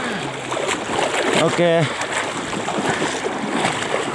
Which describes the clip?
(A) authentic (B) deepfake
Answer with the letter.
A